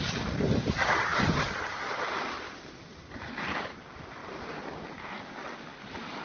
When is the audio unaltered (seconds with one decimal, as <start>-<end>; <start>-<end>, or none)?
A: 4.2-5.2